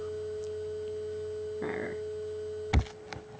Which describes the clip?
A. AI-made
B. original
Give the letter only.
B